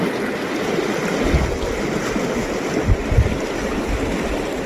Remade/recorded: recorded